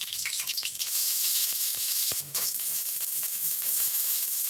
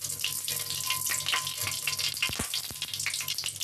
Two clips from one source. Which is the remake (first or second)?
first